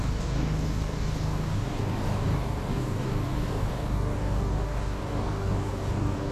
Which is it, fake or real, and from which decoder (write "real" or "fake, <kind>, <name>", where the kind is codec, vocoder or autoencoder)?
fake, codec, DAC